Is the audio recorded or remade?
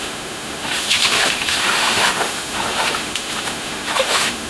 remade